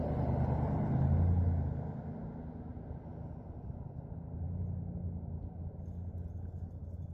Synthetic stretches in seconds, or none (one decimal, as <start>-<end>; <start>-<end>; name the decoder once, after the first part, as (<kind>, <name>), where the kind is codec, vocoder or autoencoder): none